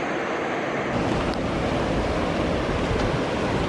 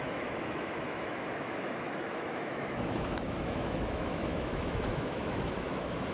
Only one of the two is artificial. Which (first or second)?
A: second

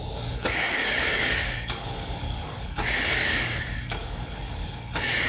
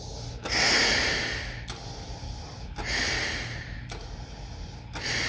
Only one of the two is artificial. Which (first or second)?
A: first